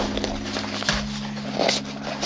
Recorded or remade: recorded